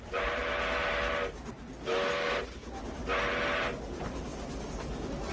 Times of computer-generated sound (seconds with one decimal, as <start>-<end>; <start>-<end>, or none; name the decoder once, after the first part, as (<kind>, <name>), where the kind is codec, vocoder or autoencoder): 0.0-0.4 (vocoder, BigVGAN v2); 2.1-3.0